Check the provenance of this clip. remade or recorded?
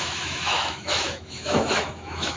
remade